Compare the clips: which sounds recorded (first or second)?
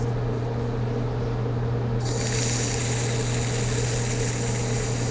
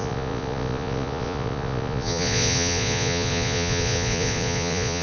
first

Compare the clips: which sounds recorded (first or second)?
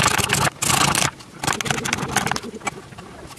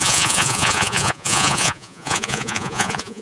first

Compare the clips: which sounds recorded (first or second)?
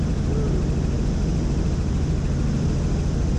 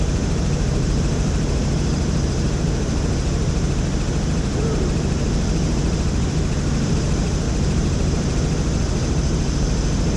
first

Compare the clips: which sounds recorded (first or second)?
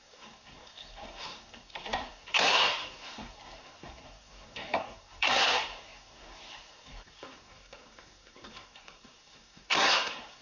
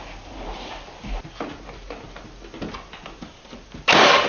second